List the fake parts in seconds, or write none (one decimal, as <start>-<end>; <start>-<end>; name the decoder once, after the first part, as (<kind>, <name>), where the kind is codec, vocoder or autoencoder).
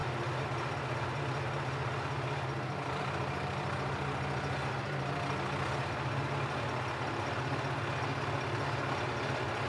none